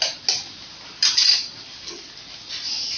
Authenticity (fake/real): real